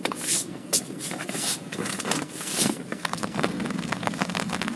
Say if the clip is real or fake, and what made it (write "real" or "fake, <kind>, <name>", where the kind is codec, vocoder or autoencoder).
fake, codec, SNAC